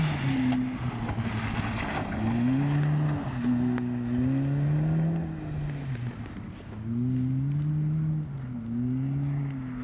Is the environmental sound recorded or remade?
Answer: recorded